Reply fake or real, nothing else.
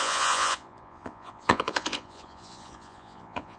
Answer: fake